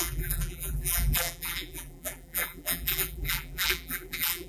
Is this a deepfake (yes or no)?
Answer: yes